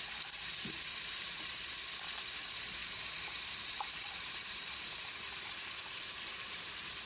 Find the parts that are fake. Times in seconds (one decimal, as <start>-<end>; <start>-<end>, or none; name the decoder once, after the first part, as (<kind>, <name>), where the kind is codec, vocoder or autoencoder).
0.9-1.4 (vocoder, BigVGAN v2); 2.8-6.1